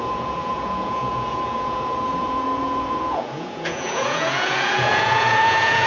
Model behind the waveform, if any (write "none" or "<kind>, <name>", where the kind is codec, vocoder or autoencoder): vocoder, Vocos